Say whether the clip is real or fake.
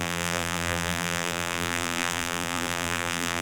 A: fake